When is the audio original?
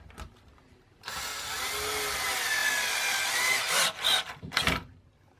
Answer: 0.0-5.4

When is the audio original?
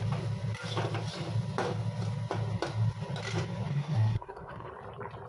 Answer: 0.0-3.7; 4.7-5.3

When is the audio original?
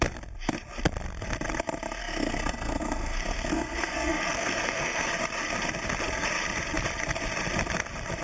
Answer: 0.0-2.0; 5.1-8.2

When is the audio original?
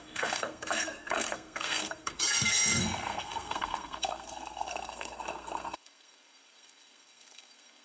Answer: none